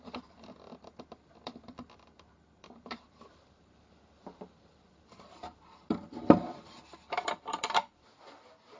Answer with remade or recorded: remade